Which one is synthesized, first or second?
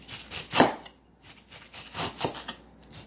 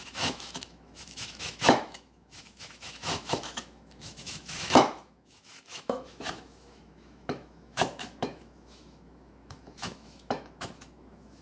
second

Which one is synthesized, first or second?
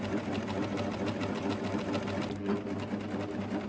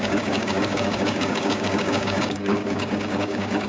second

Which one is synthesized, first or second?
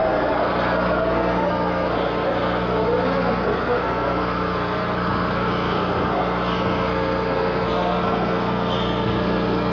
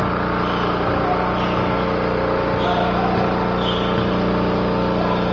first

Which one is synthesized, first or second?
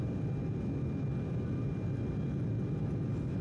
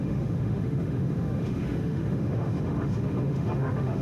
second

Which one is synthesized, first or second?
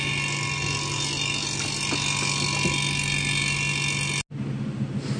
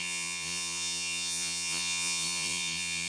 second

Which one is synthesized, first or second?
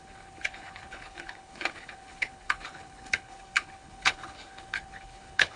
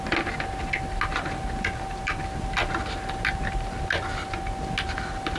first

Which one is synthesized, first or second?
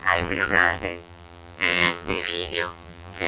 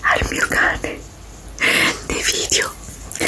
first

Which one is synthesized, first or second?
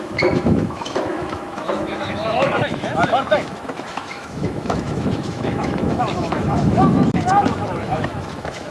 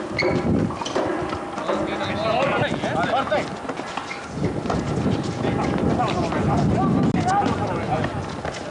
first